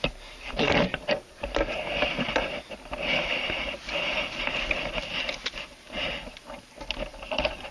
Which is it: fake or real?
real